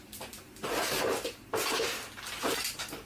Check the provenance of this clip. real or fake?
real